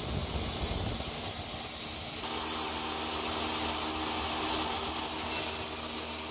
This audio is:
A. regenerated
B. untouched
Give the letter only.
B